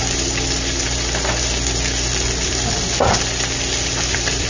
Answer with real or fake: real